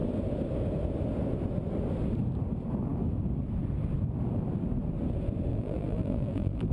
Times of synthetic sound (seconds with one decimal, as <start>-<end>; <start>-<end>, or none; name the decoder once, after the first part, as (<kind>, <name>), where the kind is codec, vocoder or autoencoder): 5.5-6.7 (vocoder, BigVGAN v2)

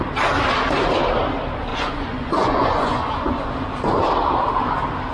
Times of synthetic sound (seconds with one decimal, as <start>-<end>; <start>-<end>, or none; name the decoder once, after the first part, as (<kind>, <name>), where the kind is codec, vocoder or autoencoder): 1.7-3.5 (vocoder, Vocos)

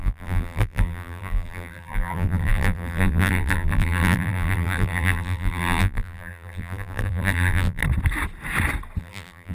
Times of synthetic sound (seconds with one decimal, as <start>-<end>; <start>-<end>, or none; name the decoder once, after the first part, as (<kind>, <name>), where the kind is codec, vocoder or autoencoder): 0.0-7.8 (vocoder, BigVGAN v2); 9.0-9.5

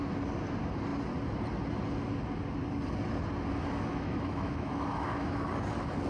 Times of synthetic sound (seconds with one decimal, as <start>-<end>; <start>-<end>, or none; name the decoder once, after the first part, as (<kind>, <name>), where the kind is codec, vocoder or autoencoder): 3.9-5.5 (autoencoder, DAC-VAE)